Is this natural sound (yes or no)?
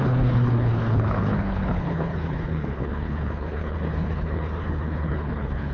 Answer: no